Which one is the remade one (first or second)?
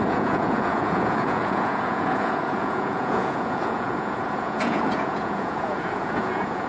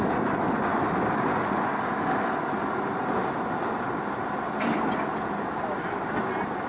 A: first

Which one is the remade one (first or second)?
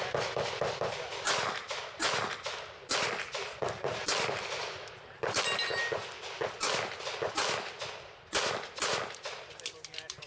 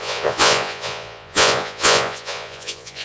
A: second